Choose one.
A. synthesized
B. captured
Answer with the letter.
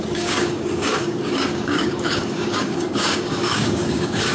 A